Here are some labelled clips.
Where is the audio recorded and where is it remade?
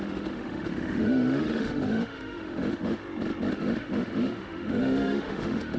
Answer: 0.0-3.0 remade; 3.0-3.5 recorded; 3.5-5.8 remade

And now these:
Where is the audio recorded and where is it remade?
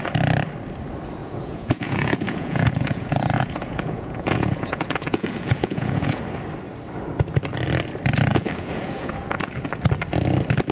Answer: 0.0-1.2 recorded; 1.2-6.2 remade; 6.2-8.3 recorded; 8.3-9.7 remade; 9.7-10.7 recorded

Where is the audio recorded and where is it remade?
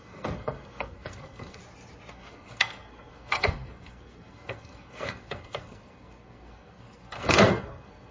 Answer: 0.0-1.6 remade; 1.6-2.1 recorded; 2.1-8.1 remade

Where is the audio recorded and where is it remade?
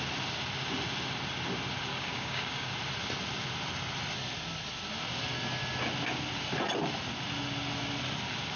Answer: 0.0-1.9 recorded; 1.9-2.7 remade; 2.7-8.6 recorded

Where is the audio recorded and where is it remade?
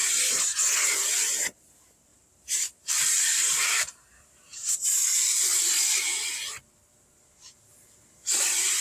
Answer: 0.0-2.1 recorded; 2.1-5.4 remade; 5.4-8.8 recorded